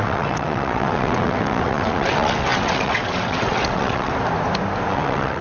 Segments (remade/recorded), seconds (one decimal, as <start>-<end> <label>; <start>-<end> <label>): 0.0-4.1 remade; 4.1-4.9 recorded; 4.9-5.4 remade